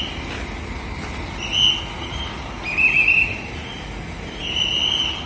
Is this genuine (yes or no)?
yes